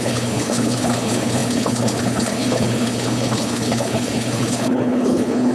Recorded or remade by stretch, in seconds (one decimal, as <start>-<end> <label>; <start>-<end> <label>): 0.0-5.5 remade